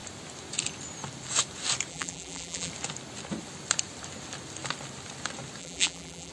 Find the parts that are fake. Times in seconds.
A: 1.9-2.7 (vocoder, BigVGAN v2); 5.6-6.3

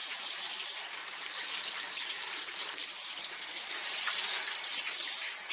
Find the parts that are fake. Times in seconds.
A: 0.0-0.5 (vocoder, BigVGAN v2); 1.0-4.0

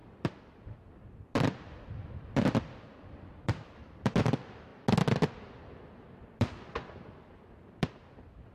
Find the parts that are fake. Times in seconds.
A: 0.0-4.7 (vocoder, BigVGAN v2); 5.3-8.5

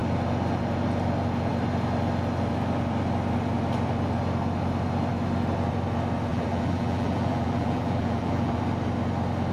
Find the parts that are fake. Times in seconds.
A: 6.3-8.6 (vocoder, BigVGAN v2)